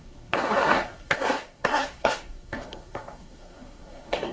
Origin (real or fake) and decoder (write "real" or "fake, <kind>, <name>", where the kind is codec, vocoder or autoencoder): fake, codec, SNAC